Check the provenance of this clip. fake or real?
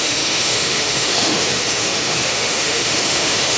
fake